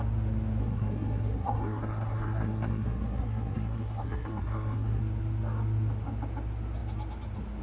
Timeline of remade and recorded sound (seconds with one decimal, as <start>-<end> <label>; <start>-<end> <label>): 0.0-0.6 recorded; 0.6-5.0 remade; 5.0-7.6 recorded